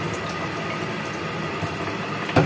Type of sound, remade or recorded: remade